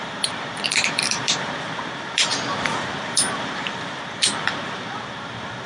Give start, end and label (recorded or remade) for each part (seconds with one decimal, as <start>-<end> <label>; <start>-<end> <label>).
0.0-5.7 remade

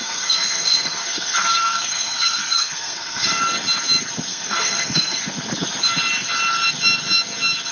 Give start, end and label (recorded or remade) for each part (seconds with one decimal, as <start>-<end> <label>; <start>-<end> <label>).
0.0-3.4 remade; 3.4-4.3 recorded; 4.3-5.2 remade; 5.2-7.7 recorded

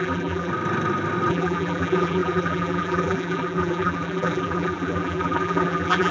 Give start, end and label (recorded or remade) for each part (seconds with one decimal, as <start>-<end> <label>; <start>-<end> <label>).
0.0-0.5 remade; 0.5-1.3 recorded; 1.3-6.1 remade

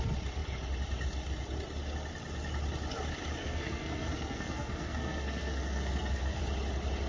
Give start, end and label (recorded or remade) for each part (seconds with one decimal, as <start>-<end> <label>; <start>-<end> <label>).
0.0-3.4 recorded; 3.4-6.4 remade; 6.4-7.1 recorded

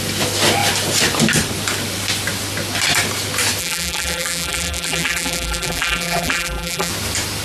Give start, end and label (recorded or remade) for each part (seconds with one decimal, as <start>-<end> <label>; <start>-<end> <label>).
0.0-3.6 recorded; 3.6-6.9 remade; 6.9-7.4 recorded